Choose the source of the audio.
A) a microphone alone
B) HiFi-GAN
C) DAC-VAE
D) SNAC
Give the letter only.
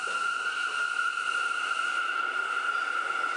A